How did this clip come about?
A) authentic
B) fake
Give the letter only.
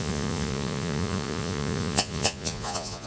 B